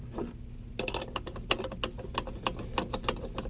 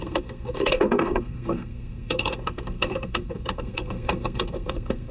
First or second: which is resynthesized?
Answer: second